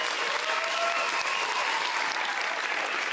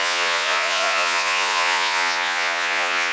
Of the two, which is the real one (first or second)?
first